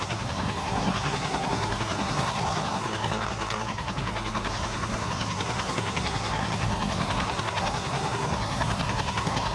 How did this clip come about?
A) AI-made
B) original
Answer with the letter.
A